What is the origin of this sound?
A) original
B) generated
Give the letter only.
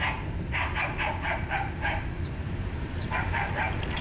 B